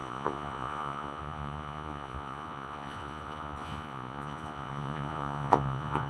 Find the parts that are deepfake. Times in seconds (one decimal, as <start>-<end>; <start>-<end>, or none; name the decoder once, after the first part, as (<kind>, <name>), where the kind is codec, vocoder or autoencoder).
0.0-6.1 (vocoder, Vocos)